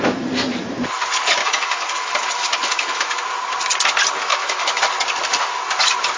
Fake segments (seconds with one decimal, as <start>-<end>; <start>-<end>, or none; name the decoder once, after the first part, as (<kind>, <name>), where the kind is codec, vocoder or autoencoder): 1.4-3.2 (autoencoder, DAC-VAE); 4.3-4.8

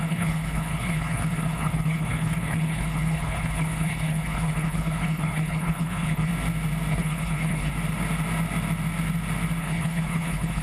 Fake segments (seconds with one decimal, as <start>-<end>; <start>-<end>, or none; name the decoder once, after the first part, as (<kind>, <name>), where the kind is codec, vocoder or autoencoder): 0.0-6.3 (codec, HILCodec); 6.9-7.7; 9.6-10.6